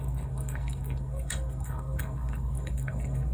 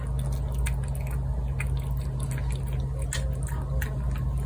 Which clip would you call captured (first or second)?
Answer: second